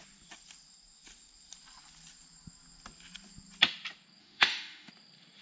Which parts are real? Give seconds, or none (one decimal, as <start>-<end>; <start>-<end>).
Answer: 0.0-4.2; 4.9-5.4